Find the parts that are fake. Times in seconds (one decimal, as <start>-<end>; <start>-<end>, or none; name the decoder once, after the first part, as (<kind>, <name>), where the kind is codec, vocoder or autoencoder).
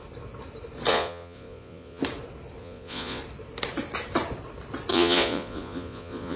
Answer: 0.9-2.0 (vocoder, Vocos); 2.6-3.2; 4.9-6.4